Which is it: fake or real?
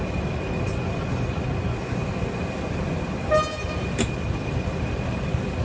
real